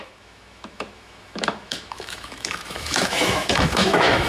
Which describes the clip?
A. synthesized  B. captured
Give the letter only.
A